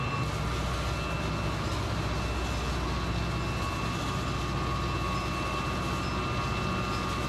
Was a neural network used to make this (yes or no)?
no